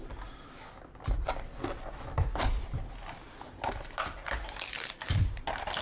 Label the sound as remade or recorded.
remade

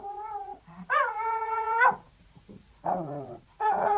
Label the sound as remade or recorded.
remade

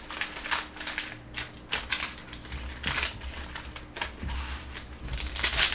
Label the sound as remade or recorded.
recorded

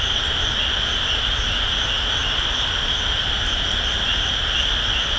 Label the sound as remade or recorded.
recorded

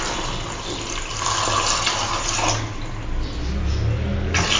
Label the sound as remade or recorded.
recorded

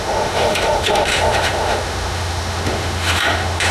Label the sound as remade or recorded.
remade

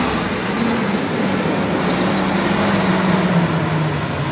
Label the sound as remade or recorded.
recorded